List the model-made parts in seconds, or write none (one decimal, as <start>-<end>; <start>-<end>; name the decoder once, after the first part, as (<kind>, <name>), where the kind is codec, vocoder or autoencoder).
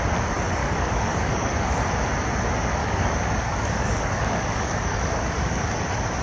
0.6-1.8 (codec, DAC); 2.8-5.7